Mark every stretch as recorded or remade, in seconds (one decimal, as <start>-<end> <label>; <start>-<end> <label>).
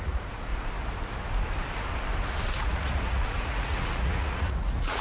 0.0-0.5 remade; 0.5-2.6 recorded; 2.6-5.0 remade